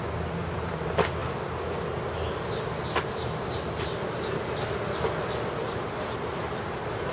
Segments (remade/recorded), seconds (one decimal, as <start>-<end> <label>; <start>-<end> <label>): 0.0-1.2 remade; 1.2-5.5 recorded; 5.5-7.1 remade